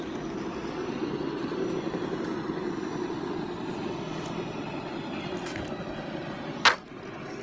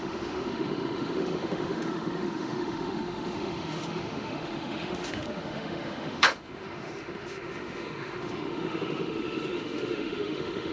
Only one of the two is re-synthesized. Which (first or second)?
second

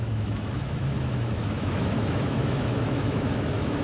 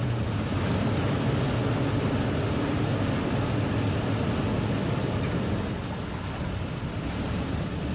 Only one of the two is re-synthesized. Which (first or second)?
first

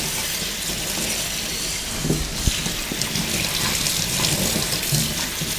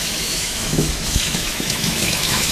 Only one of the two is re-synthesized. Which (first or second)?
second